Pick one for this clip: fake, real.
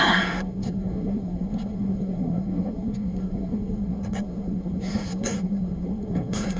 fake